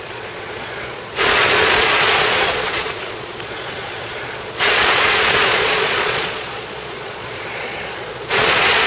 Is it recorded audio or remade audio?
remade